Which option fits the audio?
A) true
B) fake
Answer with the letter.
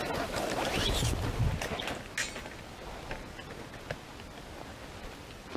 A